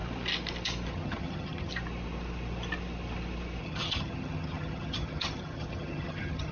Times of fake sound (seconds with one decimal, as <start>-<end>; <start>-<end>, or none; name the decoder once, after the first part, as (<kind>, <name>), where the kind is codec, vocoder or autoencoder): 0.9-1.7 (vocoder, HiFi-GAN); 3.6-6.5